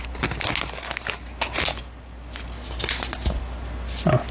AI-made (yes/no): no